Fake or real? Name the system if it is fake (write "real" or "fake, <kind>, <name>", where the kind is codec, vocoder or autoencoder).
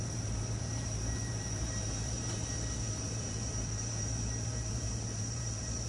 fake, vocoder, BigVGAN v2